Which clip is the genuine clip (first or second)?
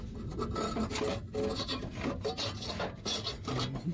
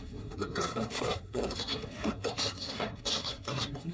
first